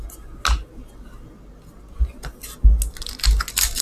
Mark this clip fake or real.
real